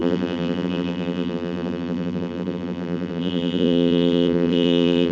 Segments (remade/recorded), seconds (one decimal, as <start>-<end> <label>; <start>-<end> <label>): 0.0-5.1 remade